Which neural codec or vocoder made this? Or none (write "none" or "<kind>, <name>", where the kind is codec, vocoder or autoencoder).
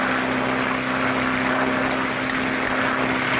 none